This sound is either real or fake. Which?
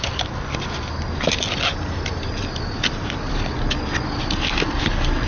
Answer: real